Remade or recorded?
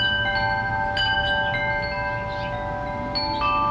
recorded